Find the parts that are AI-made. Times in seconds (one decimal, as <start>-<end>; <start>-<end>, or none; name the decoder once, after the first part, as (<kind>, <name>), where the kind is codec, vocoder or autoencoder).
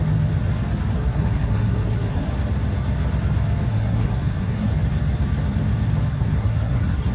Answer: 0.9-2.3 (codec, SNAC); 3.7-4.7; 6.1-7.1